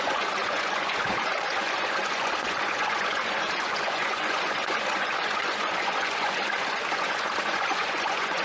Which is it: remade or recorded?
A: remade